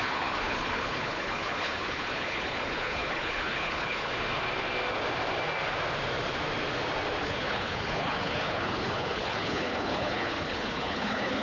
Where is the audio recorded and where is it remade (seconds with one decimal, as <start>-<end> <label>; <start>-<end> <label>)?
0.0-4.1 remade; 4.1-7.2 recorded; 7.2-11.4 remade